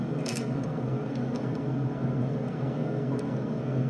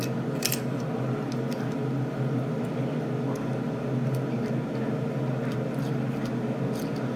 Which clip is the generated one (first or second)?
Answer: first